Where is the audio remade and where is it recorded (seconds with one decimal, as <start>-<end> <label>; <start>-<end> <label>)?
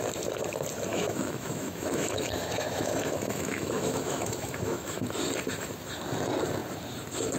0.0-0.9 recorded; 0.9-5.0 remade; 5.0-7.4 recorded